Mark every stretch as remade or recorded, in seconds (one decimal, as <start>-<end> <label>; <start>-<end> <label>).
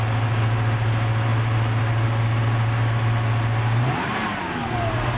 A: 0.0-5.2 recorded